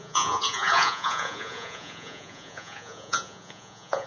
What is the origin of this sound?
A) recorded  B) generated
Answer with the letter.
B